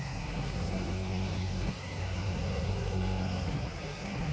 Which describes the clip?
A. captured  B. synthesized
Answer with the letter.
B